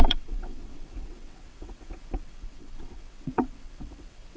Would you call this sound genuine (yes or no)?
no